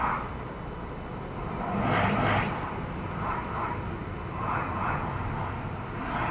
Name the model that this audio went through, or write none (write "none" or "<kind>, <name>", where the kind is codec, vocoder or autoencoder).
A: none